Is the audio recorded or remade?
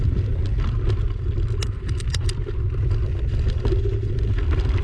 recorded